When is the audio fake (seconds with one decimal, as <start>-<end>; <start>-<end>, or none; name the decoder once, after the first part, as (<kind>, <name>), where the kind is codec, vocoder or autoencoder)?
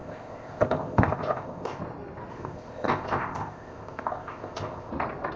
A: 0.0-1.8 (codec, ZipCodec); 2.3-4.9